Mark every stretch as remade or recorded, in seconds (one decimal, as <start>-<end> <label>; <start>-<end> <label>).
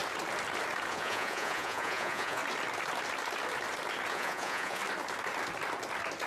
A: 0.0-0.9 recorded; 0.9-2.4 remade; 2.4-4.1 recorded; 4.1-4.8 remade; 4.8-6.3 recorded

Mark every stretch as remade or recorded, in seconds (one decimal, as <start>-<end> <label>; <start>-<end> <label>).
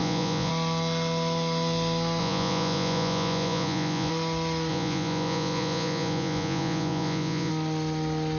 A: 0.0-0.5 remade; 0.5-2.2 recorded; 2.2-4.1 remade; 4.1-4.7 recorded; 4.7-7.5 remade; 7.5-8.4 recorded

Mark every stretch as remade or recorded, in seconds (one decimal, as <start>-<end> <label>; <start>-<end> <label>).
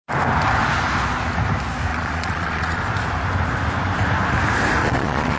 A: 0.0-1.9 recorded; 1.9-2.8 remade; 2.8-4.8 recorded; 4.8-5.4 remade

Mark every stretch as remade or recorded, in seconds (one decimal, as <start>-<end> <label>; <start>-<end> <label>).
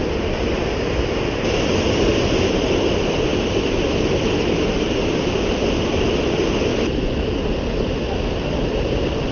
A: 0.0-9.3 recorded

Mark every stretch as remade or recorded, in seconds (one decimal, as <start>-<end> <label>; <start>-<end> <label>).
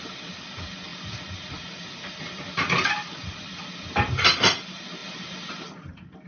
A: 0.0-6.3 recorded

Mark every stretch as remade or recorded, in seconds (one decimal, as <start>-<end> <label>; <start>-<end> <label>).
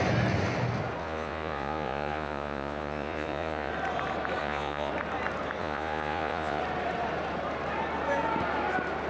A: 0.0-1.0 recorded; 1.0-3.7 remade; 3.7-4.4 recorded; 4.4-4.9 remade; 4.9-5.6 recorded; 5.6-6.6 remade; 6.6-9.1 recorded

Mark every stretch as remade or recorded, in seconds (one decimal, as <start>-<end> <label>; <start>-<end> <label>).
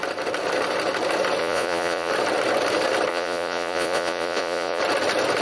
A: 0.0-1.4 recorded; 1.4-2.1 remade; 2.1-3.1 recorded; 3.1-4.8 remade; 4.8-5.4 recorded